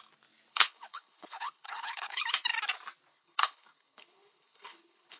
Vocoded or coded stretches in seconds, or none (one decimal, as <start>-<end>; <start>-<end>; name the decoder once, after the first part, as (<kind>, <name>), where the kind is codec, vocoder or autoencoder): 0.5-2.2 (codec, HILCodec); 3.1-5.2